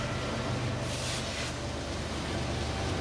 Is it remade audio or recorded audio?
recorded